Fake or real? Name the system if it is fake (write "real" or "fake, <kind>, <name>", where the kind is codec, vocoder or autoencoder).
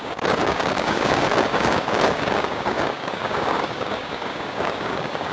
fake, codec, DAC